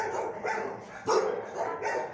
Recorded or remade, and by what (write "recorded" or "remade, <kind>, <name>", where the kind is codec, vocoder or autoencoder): recorded